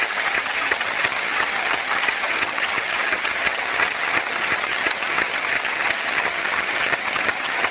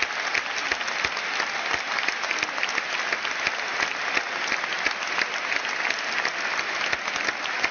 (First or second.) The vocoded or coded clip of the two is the first